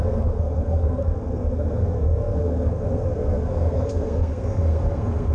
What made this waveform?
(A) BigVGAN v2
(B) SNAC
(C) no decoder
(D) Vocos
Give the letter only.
B